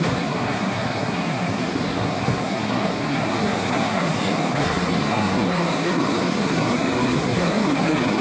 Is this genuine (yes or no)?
no